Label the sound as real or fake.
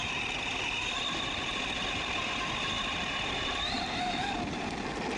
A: real